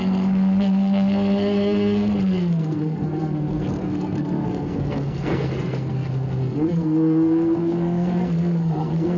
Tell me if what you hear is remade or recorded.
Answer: remade